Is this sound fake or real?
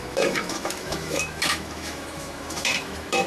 fake